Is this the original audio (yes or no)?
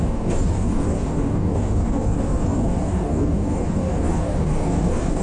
no